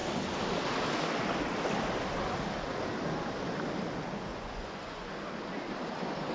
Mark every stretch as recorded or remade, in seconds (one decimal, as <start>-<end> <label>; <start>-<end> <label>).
0.0-4.3 recorded; 4.3-5.1 remade; 5.1-6.3 recorded